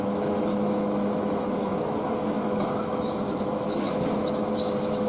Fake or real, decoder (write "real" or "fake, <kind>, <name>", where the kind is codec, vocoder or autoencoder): fake, autoencoder, DAC-VAE